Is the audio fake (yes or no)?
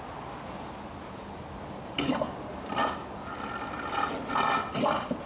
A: no